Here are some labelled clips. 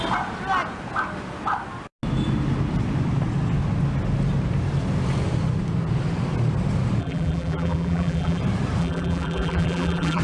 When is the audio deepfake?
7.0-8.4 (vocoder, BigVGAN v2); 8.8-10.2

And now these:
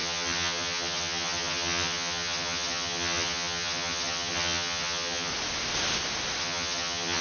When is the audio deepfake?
0.0-5.3 (vocoder, HiFi-GAN); 6.4-7.2

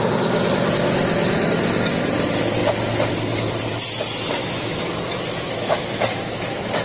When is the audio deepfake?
4.4-6.8 (autoencoder, DAC-VAE)

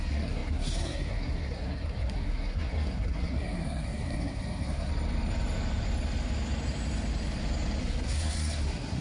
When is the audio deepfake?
0.0-4.9 (codec, SNAC); 7.8-9.0

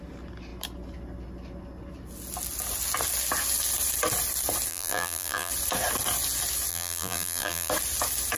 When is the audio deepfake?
4.7-5.5 (vocoder, BigVGAN v2); 6.7-7.7